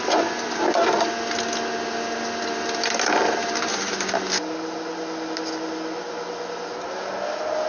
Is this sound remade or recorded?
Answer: recorded